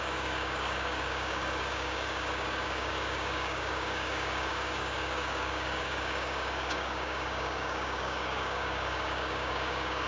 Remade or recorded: remade